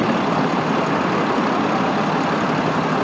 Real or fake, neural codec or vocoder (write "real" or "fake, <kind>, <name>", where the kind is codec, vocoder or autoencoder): real